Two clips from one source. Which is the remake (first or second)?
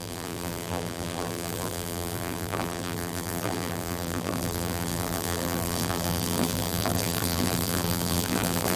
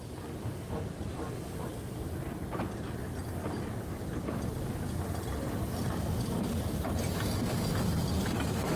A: first